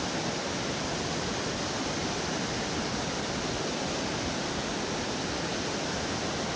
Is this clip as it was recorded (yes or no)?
yes